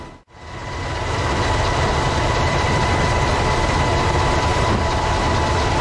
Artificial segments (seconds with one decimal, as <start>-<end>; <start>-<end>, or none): 0.6-4.1; 4.5-5.2